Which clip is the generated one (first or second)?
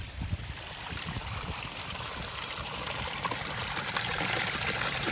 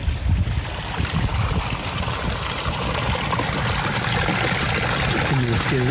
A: first